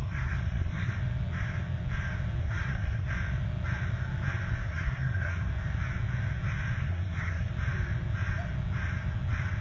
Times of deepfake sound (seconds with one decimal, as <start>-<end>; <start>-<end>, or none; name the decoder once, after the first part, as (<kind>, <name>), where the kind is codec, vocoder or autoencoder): 0.0-1.0 (codec, SNAC); 2.4-3.1; 4.6-5.5; 6.8-7.5